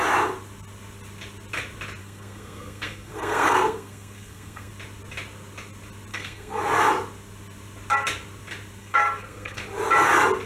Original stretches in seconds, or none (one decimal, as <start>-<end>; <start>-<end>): 0.0-2.0; 4.7-6.1; 6.6-8.8; 9.6-10.5